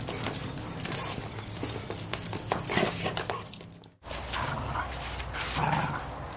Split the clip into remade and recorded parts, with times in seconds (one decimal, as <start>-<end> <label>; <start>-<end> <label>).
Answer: 0.0-6.4 recorded